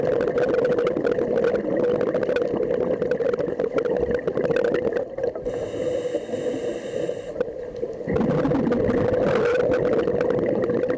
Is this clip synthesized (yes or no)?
no